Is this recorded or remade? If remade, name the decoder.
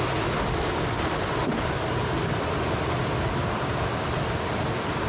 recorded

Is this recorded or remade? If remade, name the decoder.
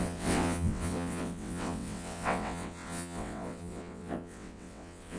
remade, vocoder, WaveNeXt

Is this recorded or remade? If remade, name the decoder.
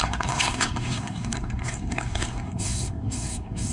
remade, codec, SNAC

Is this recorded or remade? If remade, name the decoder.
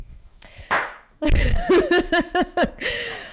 remade, autoencoder, DAC-VAE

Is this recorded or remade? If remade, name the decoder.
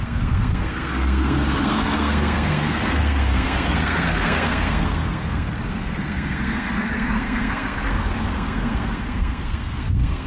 remade, codec, SNAC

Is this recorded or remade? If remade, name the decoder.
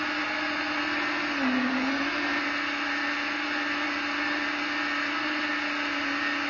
recorded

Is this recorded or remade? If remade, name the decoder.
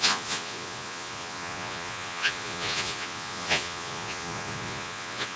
remade, vocoder, Vocos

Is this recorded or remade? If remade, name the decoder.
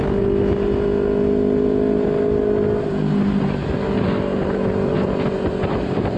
recorded